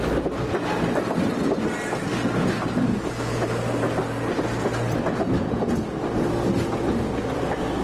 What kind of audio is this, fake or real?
real